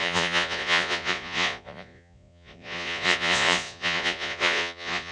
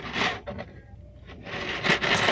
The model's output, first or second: first